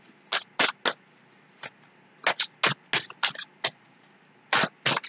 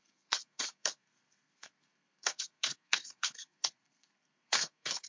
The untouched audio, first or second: first